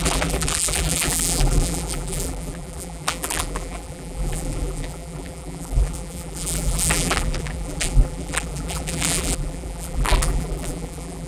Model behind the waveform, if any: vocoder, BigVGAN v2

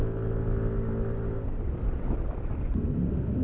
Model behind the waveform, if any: none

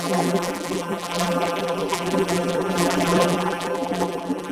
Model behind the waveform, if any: vocoder, BigVGAN v2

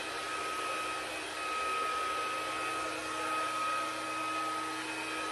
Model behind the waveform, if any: none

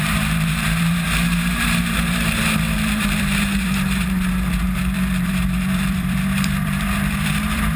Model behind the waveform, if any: vocoder, BigVGAN v2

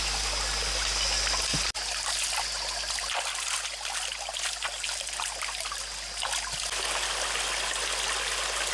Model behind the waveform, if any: none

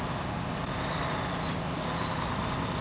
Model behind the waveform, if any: vocoder, BigVGAN v2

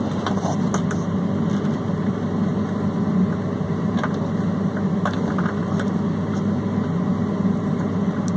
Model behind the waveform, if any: none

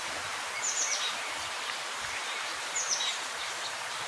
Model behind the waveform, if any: vocoder, BigVGAN v2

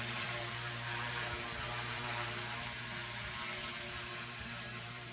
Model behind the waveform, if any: vocoder, BigVGAN v2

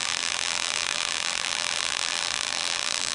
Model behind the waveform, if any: vocoder, BigVGAN v2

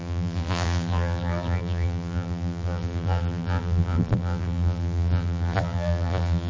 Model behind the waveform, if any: vocoder, BigVGAN v2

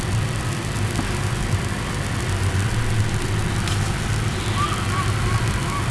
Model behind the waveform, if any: vocoder, BigVGAN v2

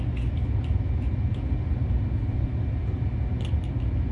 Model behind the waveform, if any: none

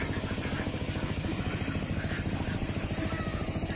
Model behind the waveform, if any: none